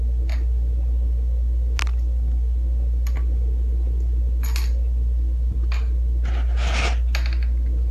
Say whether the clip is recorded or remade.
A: recorded